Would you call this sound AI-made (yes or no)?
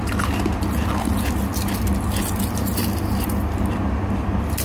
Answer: no